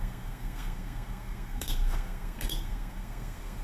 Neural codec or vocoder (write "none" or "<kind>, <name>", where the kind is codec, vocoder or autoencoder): codec, SNAC